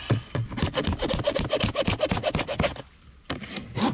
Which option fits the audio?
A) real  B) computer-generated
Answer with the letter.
A